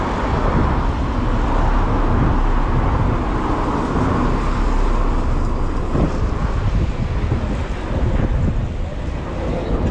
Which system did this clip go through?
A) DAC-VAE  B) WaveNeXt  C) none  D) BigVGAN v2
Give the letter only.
C